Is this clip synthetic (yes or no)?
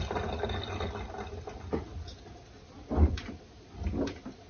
no